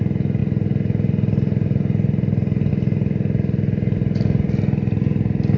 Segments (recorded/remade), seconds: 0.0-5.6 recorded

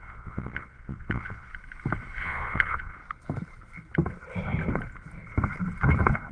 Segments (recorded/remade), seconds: 0.0-1.5 remade; 1.5-2.2 recorded; 2.2-3.0 remade; 3.0-6.3 recorded

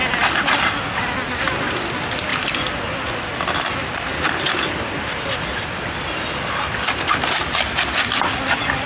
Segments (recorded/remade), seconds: 0.0-8.9 recorded